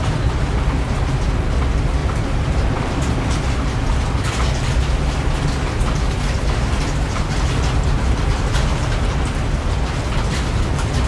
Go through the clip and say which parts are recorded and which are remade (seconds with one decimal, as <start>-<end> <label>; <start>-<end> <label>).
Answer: 0.0-2.0 recorded; 2.0-3.8 remade; 3.8-11.1 recorded